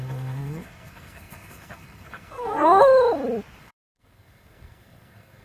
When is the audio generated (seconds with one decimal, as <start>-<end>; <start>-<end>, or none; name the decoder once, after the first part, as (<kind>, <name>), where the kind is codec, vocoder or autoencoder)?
0.0-2.8 (codec, SNAC); 3.6-5.4